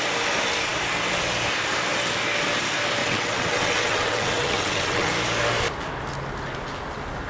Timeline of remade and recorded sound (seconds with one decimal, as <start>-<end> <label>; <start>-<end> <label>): 0.0-3.0 recorded; 3.0-5.1 remade; 5.1-7.3 recorded